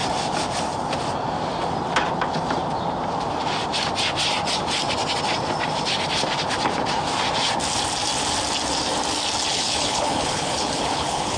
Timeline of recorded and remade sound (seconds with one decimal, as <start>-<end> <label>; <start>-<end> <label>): 0.0-9.5 recorded; 9.5-11.4 remade